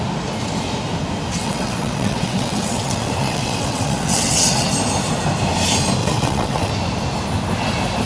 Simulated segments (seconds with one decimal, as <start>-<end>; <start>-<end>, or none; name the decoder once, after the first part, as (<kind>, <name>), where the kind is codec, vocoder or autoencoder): 1.4-4.7 (vocoder, WaveNeXt); 6.0-6.7